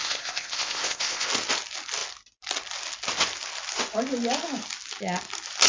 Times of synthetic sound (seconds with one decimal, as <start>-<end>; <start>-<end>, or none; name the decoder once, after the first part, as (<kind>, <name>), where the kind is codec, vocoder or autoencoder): 0.0-1.3 (codec, ZipCodec)